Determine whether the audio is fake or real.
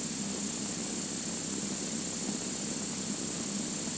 real